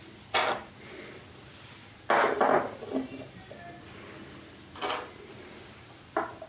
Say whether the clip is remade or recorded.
recorded